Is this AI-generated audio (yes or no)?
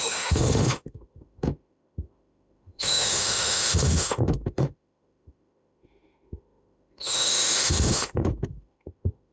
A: yes